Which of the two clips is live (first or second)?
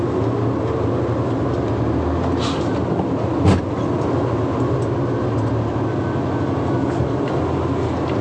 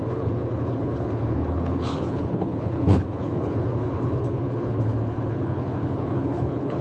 first